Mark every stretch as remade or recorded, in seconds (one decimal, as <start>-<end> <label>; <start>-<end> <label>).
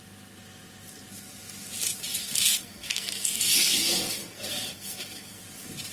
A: 0.0-2.2 recorded; 2.2-5.4 remade; 5.4-5.9 recorded